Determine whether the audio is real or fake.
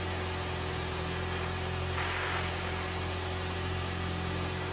real